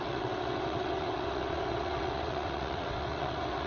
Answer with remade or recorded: remade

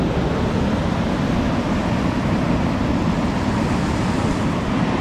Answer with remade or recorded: recorded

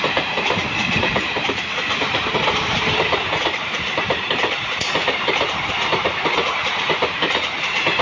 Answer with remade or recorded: remade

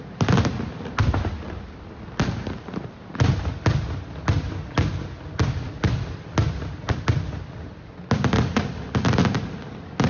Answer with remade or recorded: recorded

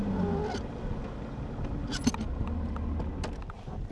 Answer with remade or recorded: recorded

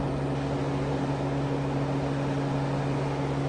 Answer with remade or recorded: recorded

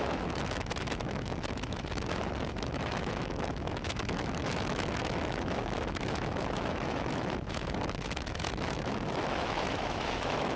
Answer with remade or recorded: remade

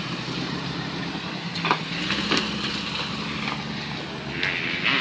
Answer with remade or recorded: recorded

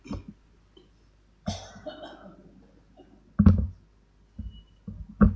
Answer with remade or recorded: recorded